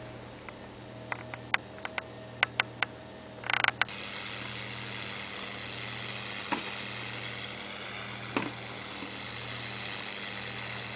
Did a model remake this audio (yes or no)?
no